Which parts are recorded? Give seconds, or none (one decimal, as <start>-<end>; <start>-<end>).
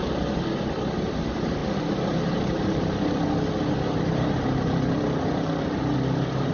0.0-6.5